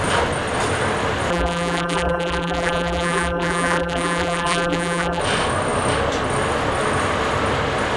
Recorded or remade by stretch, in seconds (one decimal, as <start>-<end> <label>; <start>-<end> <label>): 0.0-1.3 recorded; 1.3-5.2 remade; 5.2-8.0 recorded